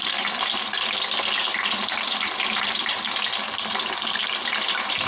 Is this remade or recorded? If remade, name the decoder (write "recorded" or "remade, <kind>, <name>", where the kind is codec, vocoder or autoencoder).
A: recorded